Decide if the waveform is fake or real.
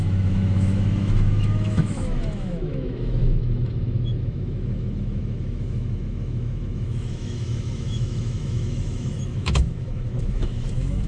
fake